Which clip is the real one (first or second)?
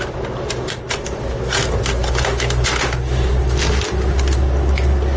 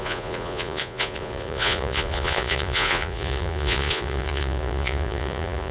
first